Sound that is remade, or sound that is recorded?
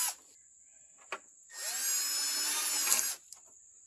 recorded